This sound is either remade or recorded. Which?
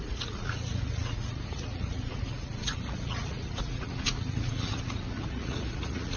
remade